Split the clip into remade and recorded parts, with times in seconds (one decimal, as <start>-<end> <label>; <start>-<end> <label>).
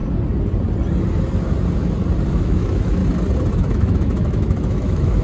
0.0-2.3 recorded; 2.3-3.0 remade; 3.0-3.5 recorded; 3.5-5.2 remade